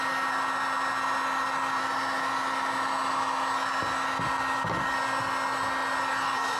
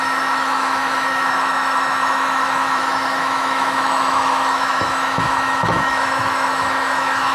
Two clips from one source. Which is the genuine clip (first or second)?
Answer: first